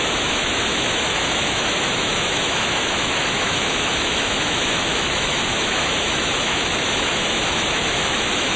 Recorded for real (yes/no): no